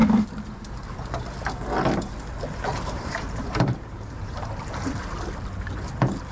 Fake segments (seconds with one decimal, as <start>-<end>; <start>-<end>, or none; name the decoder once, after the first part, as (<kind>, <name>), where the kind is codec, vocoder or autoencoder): 2.7-4.9 (vocoder, BigVGAN v2)

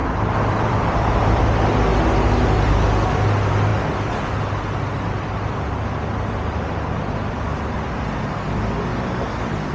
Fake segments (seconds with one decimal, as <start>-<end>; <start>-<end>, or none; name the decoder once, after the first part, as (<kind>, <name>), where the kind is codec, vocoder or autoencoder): 0.0-1.4 (vocoder, BigVGAN v2)

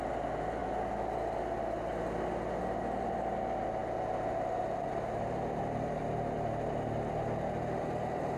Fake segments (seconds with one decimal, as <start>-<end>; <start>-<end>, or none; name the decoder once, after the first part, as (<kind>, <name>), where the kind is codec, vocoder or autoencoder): none